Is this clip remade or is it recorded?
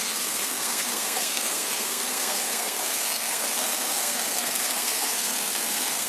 remade